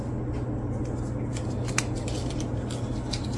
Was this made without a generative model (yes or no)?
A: yes